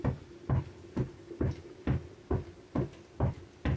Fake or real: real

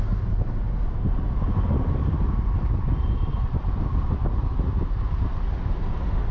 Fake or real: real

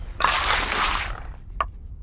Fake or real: real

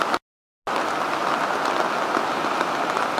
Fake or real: real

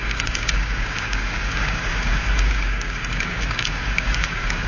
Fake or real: fake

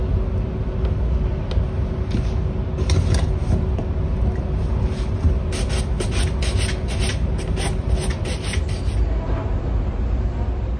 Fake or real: real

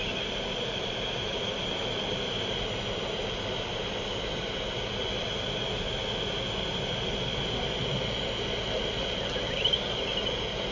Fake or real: real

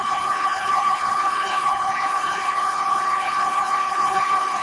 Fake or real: fake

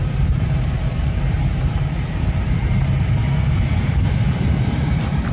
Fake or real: fake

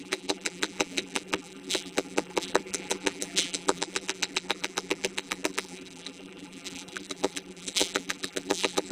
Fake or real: fake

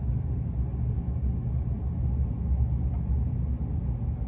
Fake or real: real